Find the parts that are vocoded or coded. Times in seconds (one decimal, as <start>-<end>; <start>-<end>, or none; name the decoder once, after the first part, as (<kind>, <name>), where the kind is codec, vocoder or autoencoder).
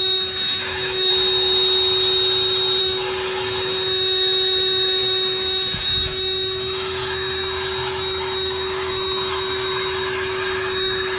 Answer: 0.0-1.1 (autoencoder, DAC-VAE); 2.8-11.2